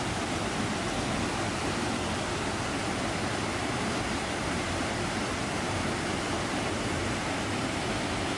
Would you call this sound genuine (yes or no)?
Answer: yes